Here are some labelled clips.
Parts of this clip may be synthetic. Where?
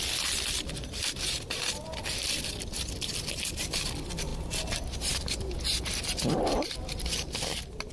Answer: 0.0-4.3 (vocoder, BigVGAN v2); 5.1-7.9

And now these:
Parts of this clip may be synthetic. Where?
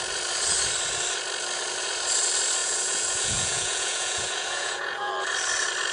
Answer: 2.6-5.1 (vocoder, Vocos)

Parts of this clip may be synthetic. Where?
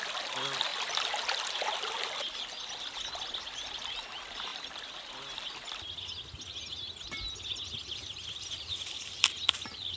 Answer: none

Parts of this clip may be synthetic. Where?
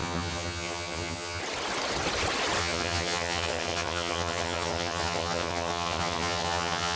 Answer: 0.0-1.4 (vocoder, HiFi-GAN); 2.6-7.0